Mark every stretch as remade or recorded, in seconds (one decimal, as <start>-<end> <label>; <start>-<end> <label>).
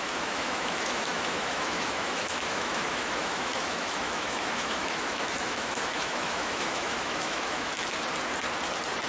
0.0-7.7 remade; 7.7-9.1 recorded